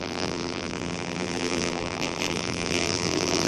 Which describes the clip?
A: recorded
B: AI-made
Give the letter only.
B